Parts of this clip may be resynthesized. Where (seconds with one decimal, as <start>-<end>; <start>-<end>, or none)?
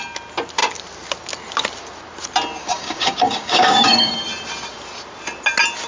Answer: 2.6-4.1